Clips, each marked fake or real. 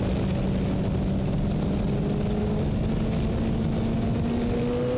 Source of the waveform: real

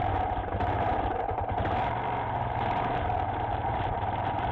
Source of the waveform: fake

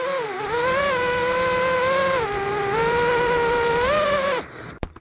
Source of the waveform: fake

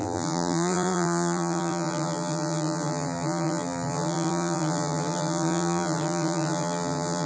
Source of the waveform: fake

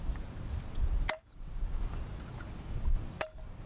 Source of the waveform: real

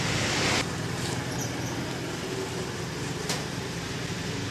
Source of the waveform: fake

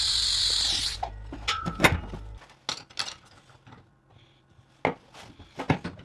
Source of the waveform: real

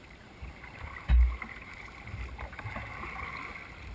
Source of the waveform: real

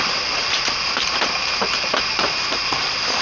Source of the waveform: fake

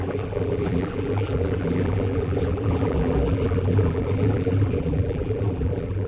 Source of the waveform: fake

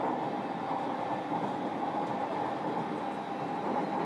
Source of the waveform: real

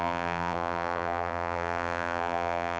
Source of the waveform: fake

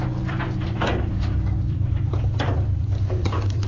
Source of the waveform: fake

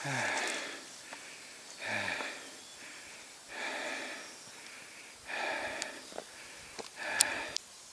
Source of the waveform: real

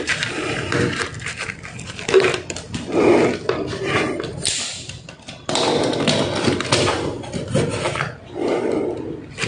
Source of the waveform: fake